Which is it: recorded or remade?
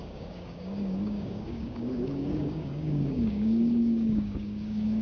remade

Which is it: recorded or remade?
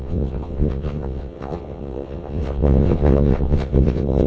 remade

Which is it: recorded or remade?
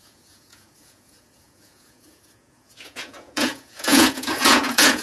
remade